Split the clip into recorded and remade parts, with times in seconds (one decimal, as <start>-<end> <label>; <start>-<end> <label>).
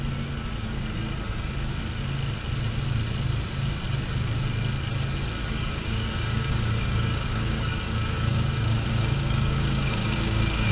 0.0-5.4 recorded; 5.4-10.7 remade